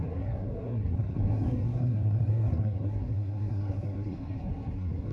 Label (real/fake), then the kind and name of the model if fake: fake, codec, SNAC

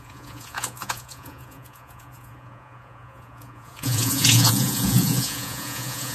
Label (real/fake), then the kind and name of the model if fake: fake, vocoder, Vocos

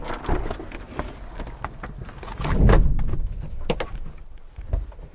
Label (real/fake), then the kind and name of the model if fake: real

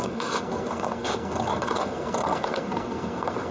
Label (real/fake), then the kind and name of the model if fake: fake, codec, SNAC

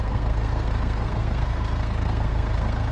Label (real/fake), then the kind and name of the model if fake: fake, codec, SNAC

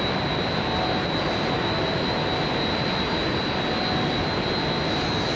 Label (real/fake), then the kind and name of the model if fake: real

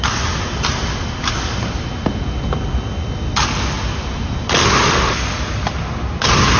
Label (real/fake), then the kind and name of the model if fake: real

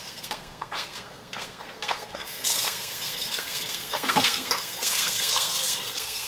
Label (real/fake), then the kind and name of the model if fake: fake, codec, SNAC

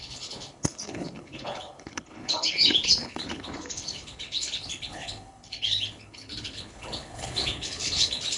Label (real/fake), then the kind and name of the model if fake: fake, codec, HILCodec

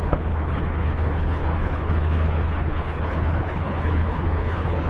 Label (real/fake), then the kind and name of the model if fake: fake, codec, HILCodec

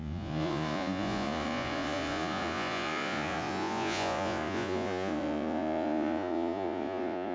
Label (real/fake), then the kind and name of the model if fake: fake, vocoder, Vocos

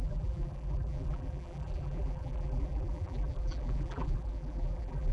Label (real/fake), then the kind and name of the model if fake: fake, vocoder, BigVGAN v2